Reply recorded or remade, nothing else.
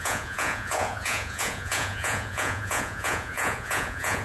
remade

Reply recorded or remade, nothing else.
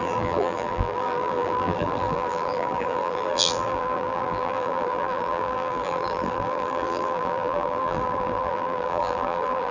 remade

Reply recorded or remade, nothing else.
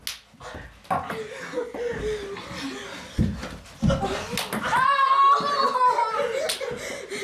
recorded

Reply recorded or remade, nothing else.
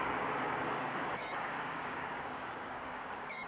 remade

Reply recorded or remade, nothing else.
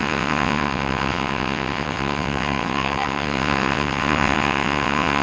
remade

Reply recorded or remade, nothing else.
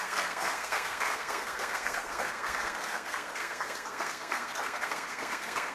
remade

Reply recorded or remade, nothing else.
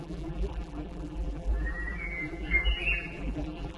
remade